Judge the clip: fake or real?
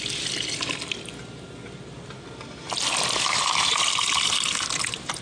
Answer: real